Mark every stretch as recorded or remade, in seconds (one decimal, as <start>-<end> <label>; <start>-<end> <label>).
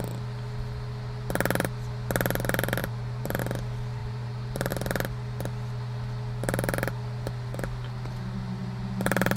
0.0-2.8 recorded; 2.8-3.4 remade; 3.4-4.0 recorded; 4.0-4.7 remade; 4.7-9.4 recorded